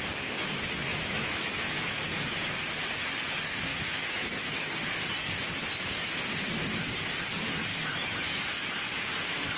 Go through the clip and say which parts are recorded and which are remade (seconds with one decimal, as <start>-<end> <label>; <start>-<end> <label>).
0.0-0.9 recorded; 0.9-2.1 remade; 2.1-3.7 recorded; 3.7-4.7 remade; 4.7-7.7 recorded; 7.7-8.4 remade; 8.4-9.6 recorded